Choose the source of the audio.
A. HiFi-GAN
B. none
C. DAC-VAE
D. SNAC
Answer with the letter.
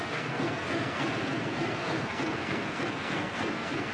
D